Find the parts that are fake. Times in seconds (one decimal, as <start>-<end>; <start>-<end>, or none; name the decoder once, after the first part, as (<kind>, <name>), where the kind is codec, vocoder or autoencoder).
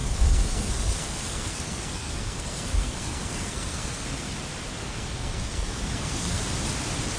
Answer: 0.0-4.3 (codec, SNAC); 4.8-6.4